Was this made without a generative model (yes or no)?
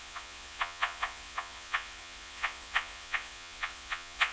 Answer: no